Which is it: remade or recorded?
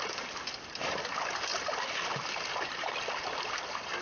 recorded